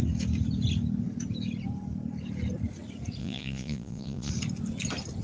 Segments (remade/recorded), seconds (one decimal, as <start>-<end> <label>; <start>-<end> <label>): 0.0-3.2 recorded; 3.2-4.3 remade; 4.3-5.2 recorded